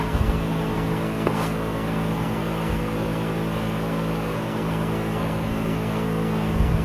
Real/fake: fake